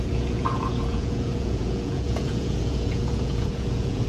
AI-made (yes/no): yes